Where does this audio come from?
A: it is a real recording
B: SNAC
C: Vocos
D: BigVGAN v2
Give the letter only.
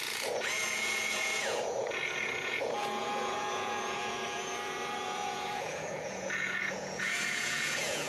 C